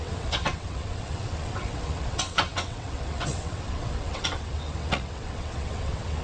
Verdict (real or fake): fake